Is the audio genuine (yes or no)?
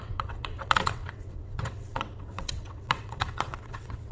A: no